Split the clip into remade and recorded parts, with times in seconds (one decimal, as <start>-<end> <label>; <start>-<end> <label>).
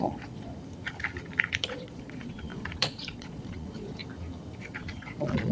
0.0-0.5 remade; 0.5-1.7 recorded; 1.7-4.0 remade; 4.0-4.6 recorded; 4.6-5.5 remade